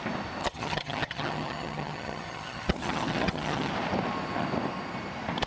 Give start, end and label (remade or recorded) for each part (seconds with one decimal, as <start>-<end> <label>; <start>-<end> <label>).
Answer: 0.0-0.4 recorded; 0.4-3.7 remade; 3.7-5.5 recorded